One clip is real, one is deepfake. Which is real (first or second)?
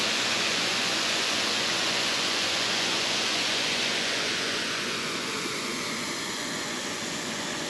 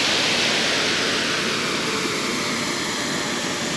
second